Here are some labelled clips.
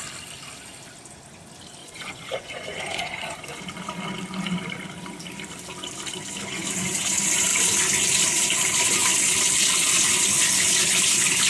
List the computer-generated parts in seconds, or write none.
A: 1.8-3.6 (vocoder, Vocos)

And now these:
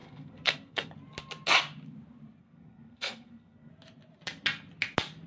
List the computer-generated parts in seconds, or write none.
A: 0.0-0.9 (codec, SNAC); 2.4-3.7